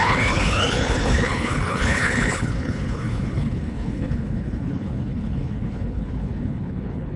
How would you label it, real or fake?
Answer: fake